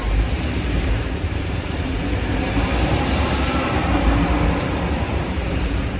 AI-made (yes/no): yes